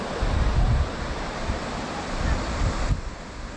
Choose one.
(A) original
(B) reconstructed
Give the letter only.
A